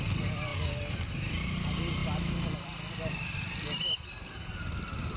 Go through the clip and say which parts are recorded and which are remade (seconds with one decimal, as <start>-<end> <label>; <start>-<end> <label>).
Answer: 0.0-5.2 recorded